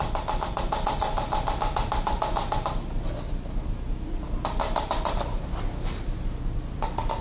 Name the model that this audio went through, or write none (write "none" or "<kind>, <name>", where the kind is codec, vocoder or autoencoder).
none